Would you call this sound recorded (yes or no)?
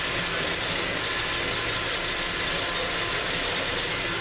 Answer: yes